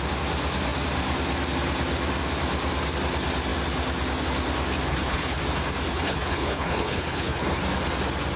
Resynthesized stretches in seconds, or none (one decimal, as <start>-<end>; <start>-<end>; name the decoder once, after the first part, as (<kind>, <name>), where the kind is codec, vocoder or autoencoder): 4.9-5.4 (codec, HILCodec); 5.9-7.6